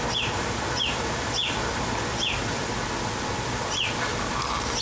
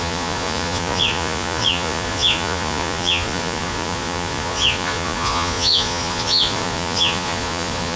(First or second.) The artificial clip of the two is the second